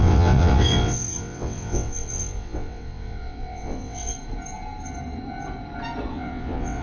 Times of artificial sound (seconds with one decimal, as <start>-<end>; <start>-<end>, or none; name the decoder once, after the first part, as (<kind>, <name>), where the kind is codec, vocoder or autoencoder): 0.0-4.1 (vocoder, WaveNeXt); 6.1-6.8